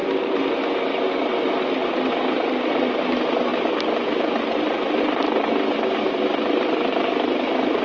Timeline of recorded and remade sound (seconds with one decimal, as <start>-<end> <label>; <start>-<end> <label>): 0.0-7.8 recorded